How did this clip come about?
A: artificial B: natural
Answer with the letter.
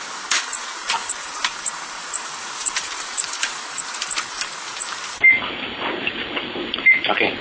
A